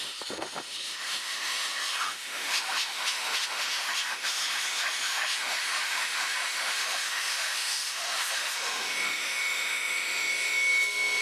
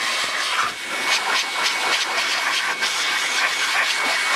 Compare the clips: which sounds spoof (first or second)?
first